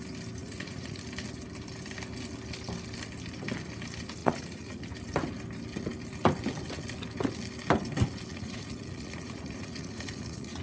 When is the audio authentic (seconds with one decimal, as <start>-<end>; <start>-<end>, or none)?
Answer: 0.0-0.4; 1.0-4.2; 4.9-8.3